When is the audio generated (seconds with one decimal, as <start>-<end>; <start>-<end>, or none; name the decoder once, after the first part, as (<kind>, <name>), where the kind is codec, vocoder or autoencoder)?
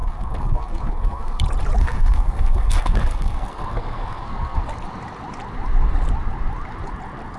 0.0-1.4 (codec, SNAC); 1.8-4.7